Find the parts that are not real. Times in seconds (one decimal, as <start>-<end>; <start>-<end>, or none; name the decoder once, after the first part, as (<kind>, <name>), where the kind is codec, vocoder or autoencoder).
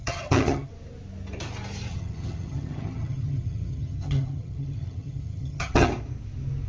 0.0-0.7 (vocoder, HiFi-GAN); 1.9-5.9